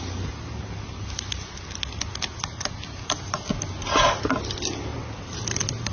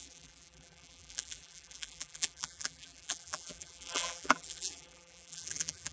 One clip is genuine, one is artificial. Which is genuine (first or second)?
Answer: first